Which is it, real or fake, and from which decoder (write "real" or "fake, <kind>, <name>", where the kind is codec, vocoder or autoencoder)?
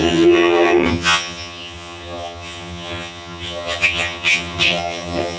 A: fake, vocoder, HiFi-GAN